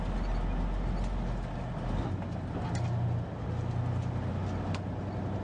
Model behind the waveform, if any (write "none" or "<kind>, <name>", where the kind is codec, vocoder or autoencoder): none